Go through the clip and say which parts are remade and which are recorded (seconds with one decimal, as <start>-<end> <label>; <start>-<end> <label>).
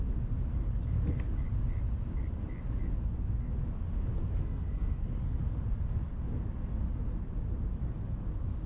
0.0-4.2 recorded; 4.2-5.4 remade; 5.4-8.7 recorded